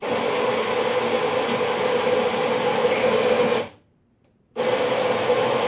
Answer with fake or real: real